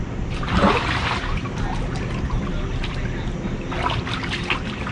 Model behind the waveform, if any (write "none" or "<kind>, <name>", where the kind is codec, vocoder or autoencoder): none